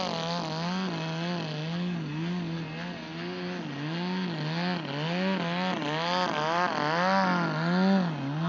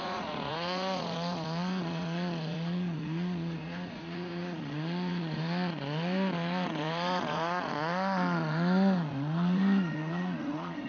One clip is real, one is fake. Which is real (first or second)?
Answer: first